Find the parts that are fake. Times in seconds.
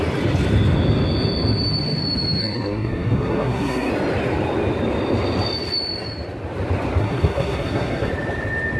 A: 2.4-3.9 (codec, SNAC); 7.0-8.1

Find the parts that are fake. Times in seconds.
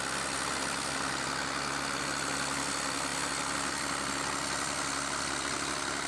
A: none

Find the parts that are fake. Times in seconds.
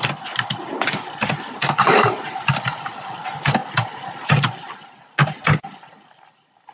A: none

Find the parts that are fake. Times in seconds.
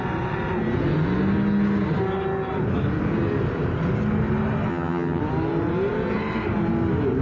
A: 4.7-5.2 (vocoder, HiFi-GAN)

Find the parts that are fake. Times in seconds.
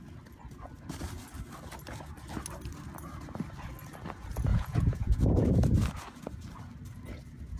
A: 4.5-5.5 (vocoder, Vocos)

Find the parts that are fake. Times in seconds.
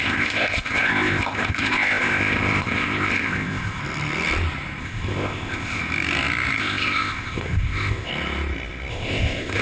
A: 0.0-3.8 (codec, ZipCodec); 4.8-5.8; 6.6-8.1; 8.9-9.6